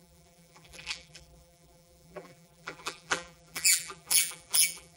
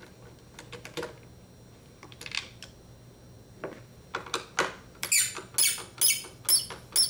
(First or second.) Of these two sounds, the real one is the second